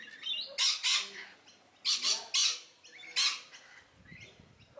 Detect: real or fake real